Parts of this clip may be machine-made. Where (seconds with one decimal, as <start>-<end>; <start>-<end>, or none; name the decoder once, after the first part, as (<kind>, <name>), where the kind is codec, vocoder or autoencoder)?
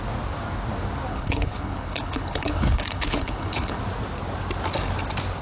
1.1-3.8 (codec, HILCodec)